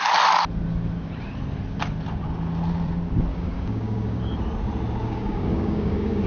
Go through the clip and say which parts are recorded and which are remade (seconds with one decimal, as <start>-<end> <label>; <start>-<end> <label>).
0.0-3.3 recorded; 3.3-4.2 remade; 4.2-5.0 recorded; 5.0-6.3 remade